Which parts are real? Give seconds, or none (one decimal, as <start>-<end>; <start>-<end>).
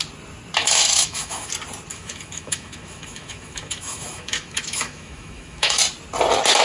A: 0.0-0.6; 1.5-1.9; 5.8-6.6